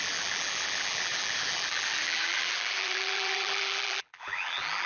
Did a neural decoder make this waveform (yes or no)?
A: yes